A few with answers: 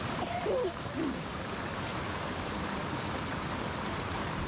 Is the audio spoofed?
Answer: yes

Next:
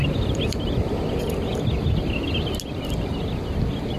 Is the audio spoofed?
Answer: no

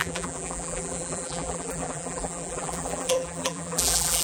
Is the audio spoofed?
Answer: yes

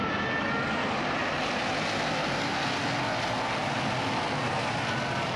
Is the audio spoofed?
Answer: no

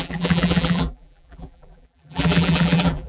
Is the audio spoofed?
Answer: yes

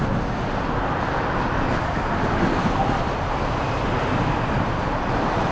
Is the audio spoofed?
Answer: yes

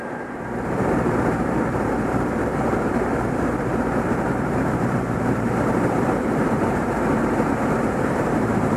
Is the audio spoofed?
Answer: yes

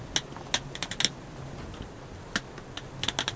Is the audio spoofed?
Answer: no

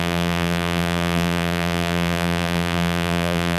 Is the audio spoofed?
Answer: yes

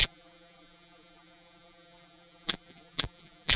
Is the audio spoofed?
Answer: yes